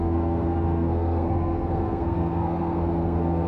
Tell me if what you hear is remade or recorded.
remade